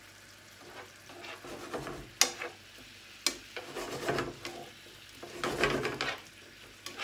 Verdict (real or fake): real